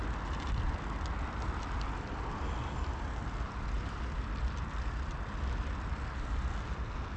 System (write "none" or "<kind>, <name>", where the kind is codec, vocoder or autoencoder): none